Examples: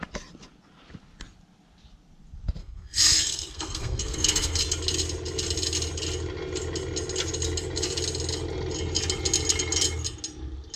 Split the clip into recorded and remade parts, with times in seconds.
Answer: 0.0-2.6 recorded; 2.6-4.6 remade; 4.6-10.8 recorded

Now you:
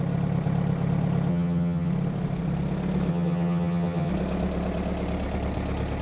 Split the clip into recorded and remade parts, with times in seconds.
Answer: 0.0-1.3 recorded; 1.3-1.9 remade; 1.9-3.1 recorded; 3.1-4.1 remade; 4.1-6.0 recorded

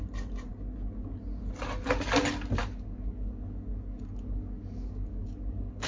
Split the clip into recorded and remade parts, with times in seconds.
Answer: 0.0-2.6 recorded; 2.6-5.9 remade

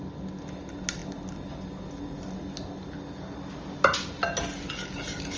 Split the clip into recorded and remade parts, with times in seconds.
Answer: 0.0-5.4 recorded

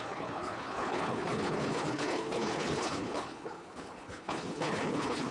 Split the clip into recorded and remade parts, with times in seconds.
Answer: 0.0-5.3 remade

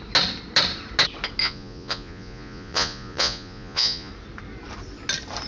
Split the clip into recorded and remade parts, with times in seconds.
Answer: 0.0-1.4 recorded; 1.4-4.1 remade; 4.1-5.5 recorded